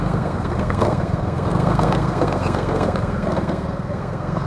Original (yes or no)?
no